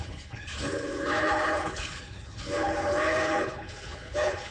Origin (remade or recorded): remade